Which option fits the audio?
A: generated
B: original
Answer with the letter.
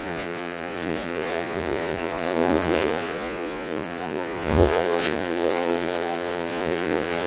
A